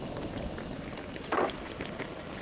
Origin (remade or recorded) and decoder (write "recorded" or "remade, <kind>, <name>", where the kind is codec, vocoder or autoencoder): recorded